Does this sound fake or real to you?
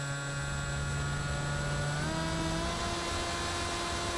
real